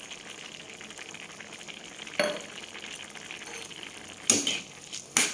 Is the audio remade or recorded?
recorded